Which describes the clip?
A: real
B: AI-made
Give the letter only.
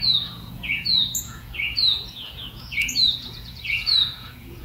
B